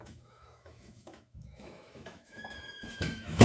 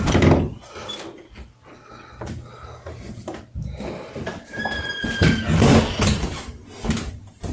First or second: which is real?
second